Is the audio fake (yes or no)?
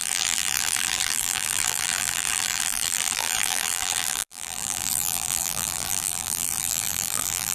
yes